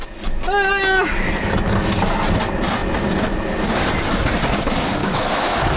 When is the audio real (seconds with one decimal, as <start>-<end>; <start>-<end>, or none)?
0.0-5.0